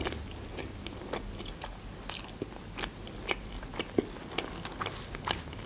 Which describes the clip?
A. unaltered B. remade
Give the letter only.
A